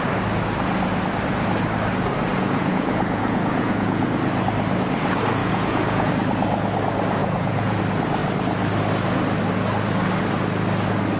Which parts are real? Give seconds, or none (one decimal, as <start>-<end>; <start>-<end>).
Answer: 0.0-2.3; 4.0-5.4; 6.1-7.2; 7.8-11.2

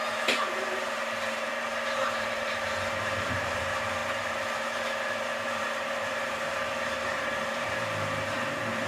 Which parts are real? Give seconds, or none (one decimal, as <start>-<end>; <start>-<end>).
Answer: none

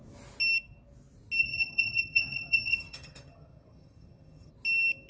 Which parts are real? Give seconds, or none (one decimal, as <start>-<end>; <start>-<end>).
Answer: 0.0-1.4; 4.5-5.1

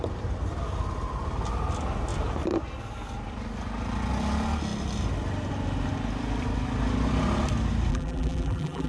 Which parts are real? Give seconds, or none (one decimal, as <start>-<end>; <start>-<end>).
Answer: 0.0-7.9

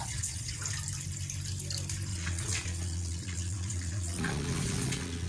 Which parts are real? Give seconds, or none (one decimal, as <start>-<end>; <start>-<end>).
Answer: 0.6-2.1

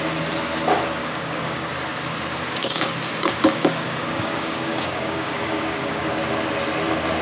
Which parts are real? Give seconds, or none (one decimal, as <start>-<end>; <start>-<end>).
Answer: 0.0-1.0; 1.7-2.6; 6.1-7.2

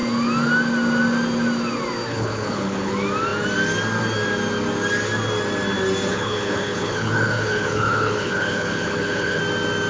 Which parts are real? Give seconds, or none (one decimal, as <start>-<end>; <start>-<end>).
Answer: 0.0-2.1; 2.9-6.1; 9.4-9.9